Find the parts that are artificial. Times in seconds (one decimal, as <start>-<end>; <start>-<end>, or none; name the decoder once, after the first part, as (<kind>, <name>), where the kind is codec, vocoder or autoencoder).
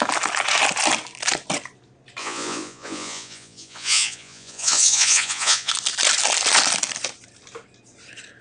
2.2-5.7 (vocoder, Vocos)